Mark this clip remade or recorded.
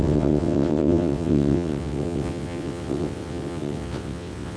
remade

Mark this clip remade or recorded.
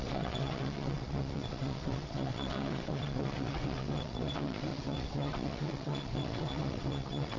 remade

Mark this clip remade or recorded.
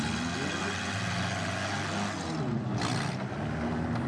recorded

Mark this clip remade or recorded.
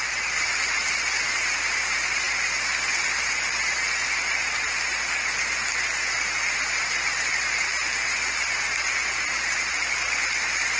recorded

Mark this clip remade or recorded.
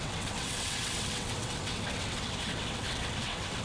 remade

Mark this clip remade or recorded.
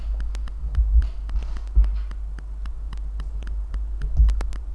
recorded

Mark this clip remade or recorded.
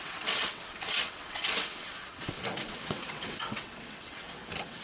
remade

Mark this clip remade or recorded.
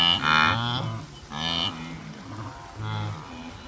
recorded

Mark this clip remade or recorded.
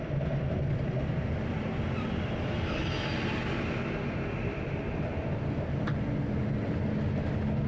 recorded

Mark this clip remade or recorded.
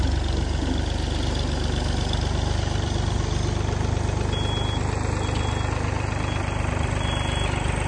recorded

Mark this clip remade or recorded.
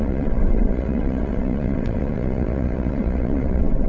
remade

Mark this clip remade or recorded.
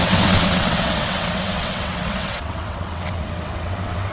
remade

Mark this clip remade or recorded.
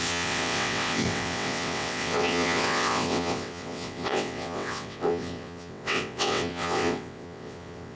remade